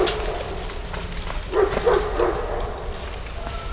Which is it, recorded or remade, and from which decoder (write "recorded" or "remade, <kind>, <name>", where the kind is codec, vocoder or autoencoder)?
recorded